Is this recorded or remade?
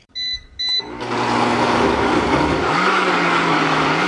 remade